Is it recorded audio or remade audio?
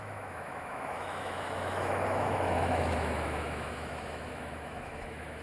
remade